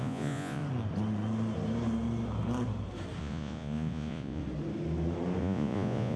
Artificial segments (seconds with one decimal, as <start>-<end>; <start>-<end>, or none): 0.0-0.6; 3.2-4.4; 5.4-6.2